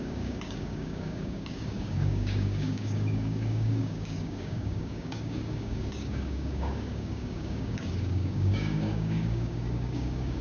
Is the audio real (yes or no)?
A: no